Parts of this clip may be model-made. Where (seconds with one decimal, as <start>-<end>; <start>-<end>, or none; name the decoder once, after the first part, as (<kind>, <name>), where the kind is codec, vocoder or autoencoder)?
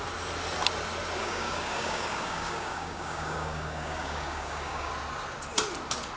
1.2-4.9 (codec, DAC)